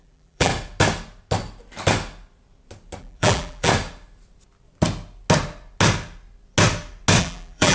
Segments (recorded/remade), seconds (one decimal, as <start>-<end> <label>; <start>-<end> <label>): 0.0-0.5 remade; 0.5-3.0 recorded; 3.0-3.7 remade; 3.7-7.2 recorded; 7.2-7.7 remade